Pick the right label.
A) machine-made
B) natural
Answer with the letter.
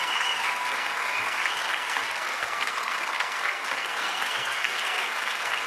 A